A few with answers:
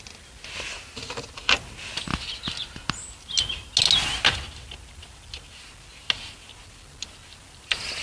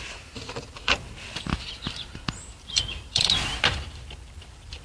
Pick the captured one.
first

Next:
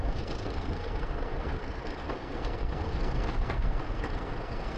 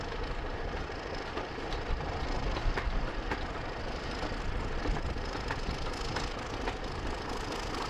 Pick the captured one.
second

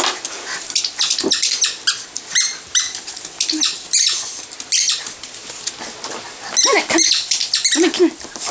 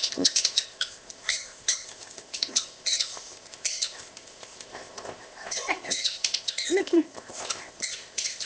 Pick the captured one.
first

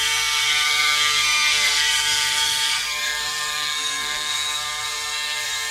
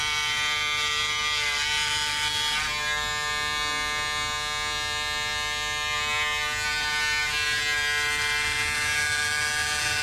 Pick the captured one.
second